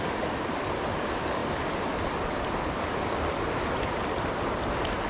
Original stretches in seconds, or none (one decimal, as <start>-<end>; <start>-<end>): 0.0-5.1